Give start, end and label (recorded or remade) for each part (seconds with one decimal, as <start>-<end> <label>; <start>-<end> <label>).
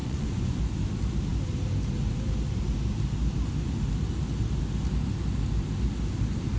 0.0-0.6 remade; 0.6-6.6 recorded